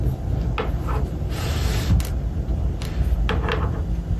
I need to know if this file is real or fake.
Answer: real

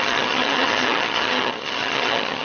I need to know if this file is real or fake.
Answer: fake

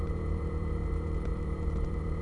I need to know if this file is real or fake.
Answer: fake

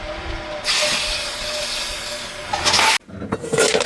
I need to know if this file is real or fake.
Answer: real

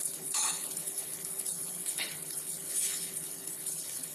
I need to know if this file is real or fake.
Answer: fake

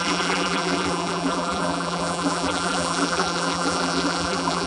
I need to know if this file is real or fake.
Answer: fake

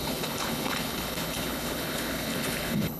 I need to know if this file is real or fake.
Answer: fake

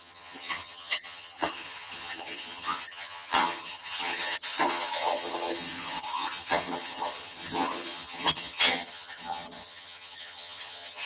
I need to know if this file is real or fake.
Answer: fake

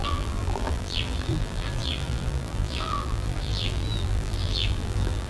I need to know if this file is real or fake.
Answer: fake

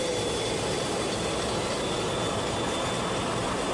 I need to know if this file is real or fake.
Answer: real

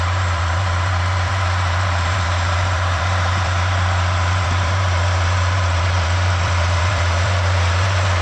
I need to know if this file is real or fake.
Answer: fake